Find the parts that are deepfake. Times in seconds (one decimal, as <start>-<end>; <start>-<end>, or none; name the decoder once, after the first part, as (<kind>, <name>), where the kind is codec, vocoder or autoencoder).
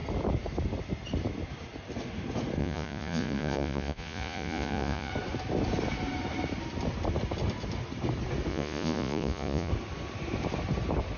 2.6-5.1 (vocoder, Vocos); 8.5-9.7